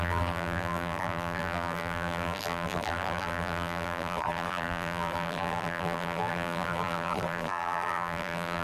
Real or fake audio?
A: fake